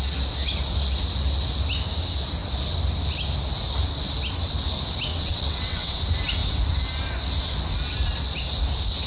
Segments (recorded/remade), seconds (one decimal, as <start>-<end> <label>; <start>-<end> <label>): 0.0-5.1 recorded; 5.1-6.0 remade; 6.0-9.1 recorded